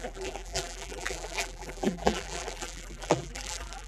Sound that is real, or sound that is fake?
fake